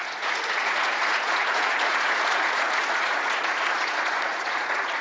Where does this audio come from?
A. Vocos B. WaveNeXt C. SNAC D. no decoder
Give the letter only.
A